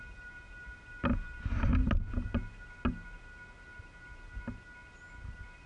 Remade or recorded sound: recorded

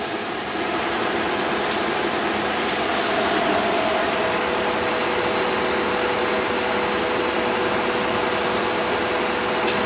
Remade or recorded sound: remade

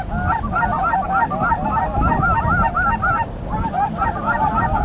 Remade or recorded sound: recorded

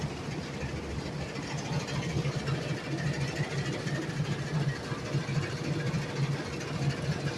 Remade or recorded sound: recorded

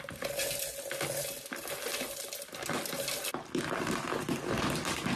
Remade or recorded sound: recorded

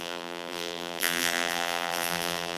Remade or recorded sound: remade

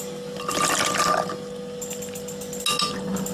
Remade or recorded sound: recorded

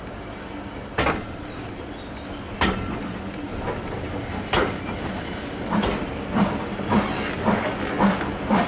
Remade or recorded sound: recorded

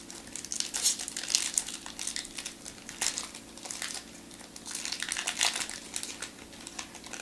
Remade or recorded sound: recorded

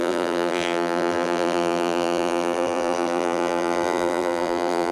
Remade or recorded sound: remade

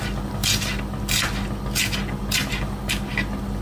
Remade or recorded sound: recorded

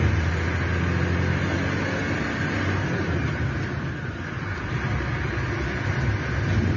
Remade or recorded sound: recorded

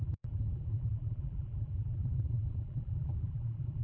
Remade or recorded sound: remade